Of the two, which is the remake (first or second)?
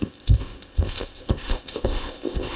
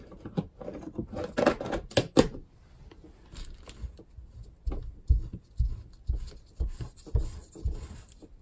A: first